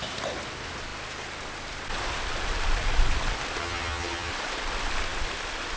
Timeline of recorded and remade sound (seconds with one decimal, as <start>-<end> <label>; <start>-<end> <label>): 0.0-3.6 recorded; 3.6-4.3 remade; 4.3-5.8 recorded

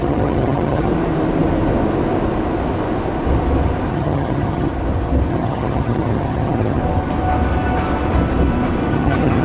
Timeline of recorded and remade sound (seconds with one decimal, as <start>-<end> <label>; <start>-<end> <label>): 0.0-0.9 remade; 0.9-3.9 recorded; 3.9-4.7 remade; 4.7-5.3 recorded; 5.3-6.8 remade; 6.8-8.9 recorded; 8.9-9.4 remade

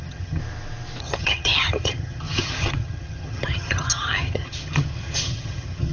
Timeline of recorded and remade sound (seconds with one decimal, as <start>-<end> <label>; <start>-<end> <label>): 0.0-0.4 remade; 0.4-1.0 recorded; 1.0-5.9 remade

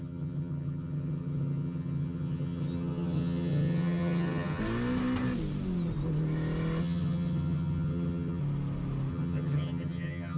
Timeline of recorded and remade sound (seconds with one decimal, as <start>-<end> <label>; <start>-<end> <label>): 0.0-4.6 remade; 4.6-6.8 recorded; 6.8-8.4 remade; 8.4-9.1 recorded; 9.1-10.4 remade